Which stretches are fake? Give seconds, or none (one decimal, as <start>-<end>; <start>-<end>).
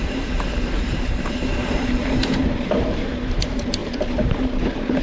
0.0-5.0